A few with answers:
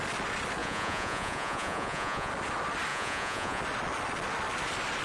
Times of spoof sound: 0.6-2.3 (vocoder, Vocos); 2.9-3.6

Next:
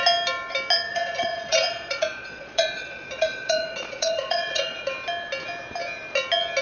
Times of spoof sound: 0.9-4.8 (vocoder, Vocos)